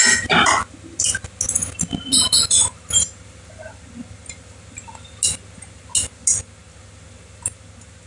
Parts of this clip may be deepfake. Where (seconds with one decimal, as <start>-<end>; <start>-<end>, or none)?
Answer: none